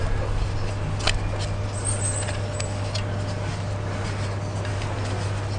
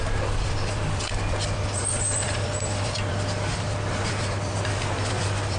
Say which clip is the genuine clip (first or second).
first